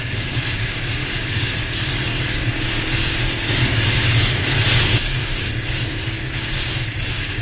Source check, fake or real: fake